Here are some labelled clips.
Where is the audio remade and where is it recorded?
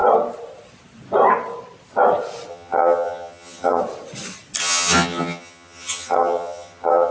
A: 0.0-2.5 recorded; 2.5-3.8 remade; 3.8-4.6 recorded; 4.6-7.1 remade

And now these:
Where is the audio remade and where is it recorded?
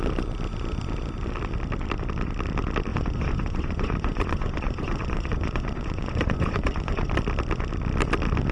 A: 0.0-2.9 recorded; 2.9-7.1 remade; 7.1-8.5 recorded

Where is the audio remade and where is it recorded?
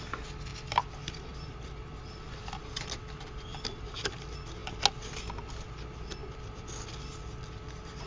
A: 0.0-0.5 recorded; 0.5-2.6 remade; 2.6-3.5 recorded; 3.5-4.1 remade; 4.1-6.2 recorded; 6.2-6.7 remade; 6.7-8.1 recorded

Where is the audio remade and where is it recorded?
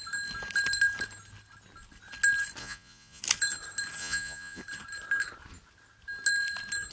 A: 0.0-2.6 recorded; 2.6-3.2 remade; 3.2-4.0 recorded; 4.0-4.6 remade; 4.6-6.9 recorded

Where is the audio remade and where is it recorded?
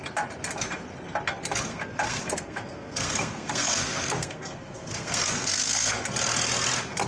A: 0.0-1.7 recorded; 1.7-6.0 remade; 6.0-7.1 recorded